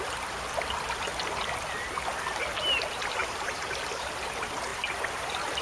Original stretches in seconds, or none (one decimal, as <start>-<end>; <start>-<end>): 0.0-3.2; 4.1-5.6